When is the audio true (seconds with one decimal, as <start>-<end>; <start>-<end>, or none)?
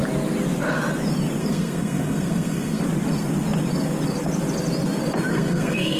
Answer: 0.0-1.4; 2.8-5.3